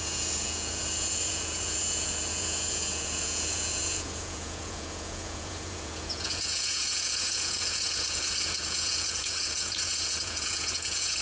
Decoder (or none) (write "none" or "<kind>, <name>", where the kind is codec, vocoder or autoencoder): vocoder, Vocos